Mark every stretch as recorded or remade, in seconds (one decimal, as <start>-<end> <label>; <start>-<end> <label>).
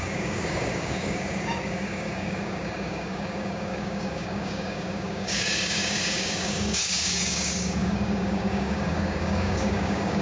0.0-10.2 remade